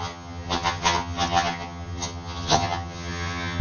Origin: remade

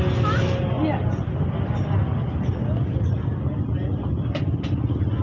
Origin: recorded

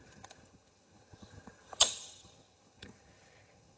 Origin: remade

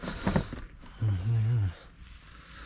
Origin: recorded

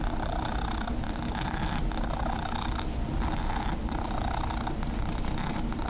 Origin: recorded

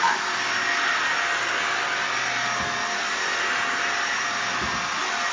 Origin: recorded